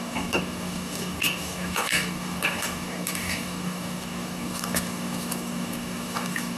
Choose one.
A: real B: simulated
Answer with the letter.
B